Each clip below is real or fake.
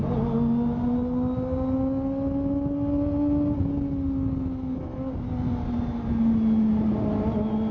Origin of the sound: real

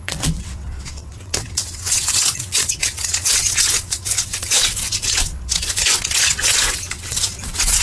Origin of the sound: fake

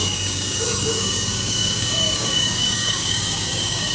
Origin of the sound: fake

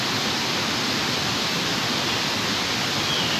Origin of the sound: real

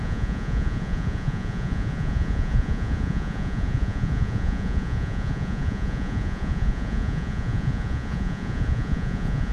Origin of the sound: fake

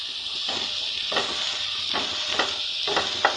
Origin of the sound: real